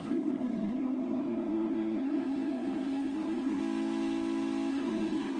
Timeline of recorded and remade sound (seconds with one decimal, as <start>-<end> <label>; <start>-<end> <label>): 0.0-3.6 remade; 3.6-4.7 recorded; 4.7-5.4 remade